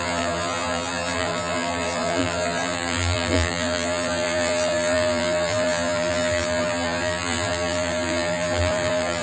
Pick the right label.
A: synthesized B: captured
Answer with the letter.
A